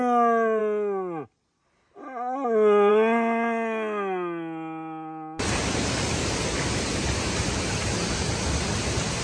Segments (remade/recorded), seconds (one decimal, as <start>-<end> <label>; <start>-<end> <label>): 0.0-9.2 recorded